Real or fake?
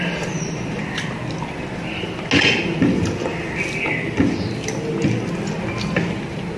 real